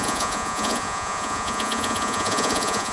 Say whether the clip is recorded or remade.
remade